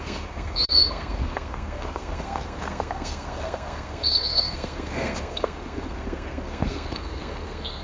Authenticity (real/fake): fake